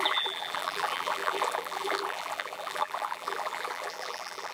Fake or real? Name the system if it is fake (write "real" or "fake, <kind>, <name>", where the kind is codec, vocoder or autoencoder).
fake, vocoder, BigVGAN v2